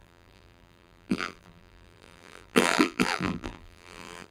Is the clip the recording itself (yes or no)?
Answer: no